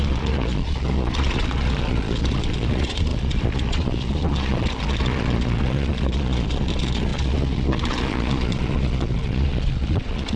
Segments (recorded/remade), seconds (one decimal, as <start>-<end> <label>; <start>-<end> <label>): 0.0-10.4 remade